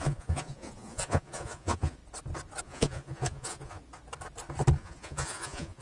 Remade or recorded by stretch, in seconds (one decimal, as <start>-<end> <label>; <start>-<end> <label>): 0.0-2.0 remade; 2.0-2.6 recorded; 2.6-3.8 remade; 3.8-4.8 recorded; 4.8-5.8 remade